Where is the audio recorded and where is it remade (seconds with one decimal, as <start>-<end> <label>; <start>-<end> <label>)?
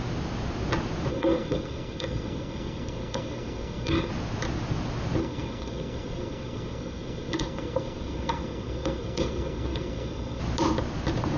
0.0-1.1 recorded; 1.1-4.1 remade; 4.1-5.2 recorded; 5.2-10.4 remade; 10.4-11.4 recorded